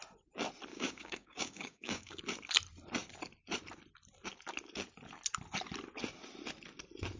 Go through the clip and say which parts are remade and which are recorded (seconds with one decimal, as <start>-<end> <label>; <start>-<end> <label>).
0.0-0.7 recorded; 0.7-2.2 remade; 2.2-7.2 recorded